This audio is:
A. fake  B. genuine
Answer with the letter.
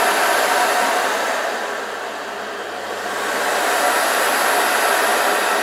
B